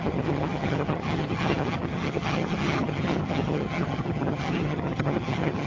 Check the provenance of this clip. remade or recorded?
remade